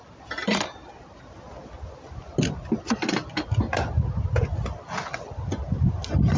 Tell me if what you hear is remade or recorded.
recorded